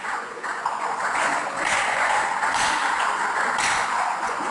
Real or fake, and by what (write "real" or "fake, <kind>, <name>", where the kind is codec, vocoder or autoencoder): fake, vocoder, Vocos